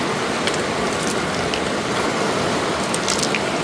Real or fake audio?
real